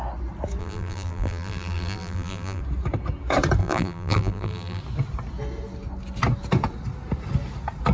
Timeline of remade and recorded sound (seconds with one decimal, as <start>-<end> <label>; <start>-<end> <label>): 0.0-0.6 recorded; 0.6-2.6 remade; 2.6-3.6 recorded; 3.6-4.8 remade; 4.8-7.9 recorded